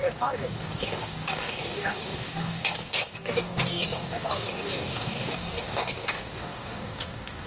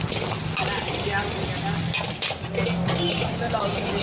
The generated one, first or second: first